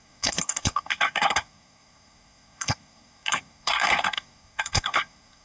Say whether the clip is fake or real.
fake